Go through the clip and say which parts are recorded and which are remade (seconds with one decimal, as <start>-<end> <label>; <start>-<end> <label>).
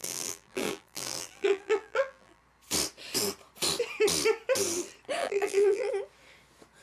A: 0.0-2.4 remade; 2.4-5.2 recorded; 5.2-5.9 remade; 5.9-6.8 recorded